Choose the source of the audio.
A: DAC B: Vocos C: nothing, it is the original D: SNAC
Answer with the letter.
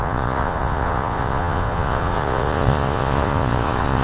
B